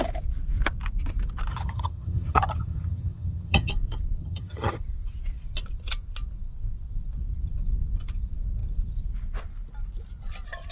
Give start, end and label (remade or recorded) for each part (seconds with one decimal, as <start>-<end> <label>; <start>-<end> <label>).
0.0-1.5 recorded; 1.5-3.7 remade; 3.7-4.2 recorded; 4.2-4.8 remade; 4.8-10.7 recorded